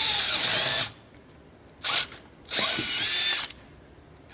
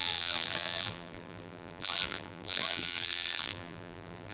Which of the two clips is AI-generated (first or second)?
second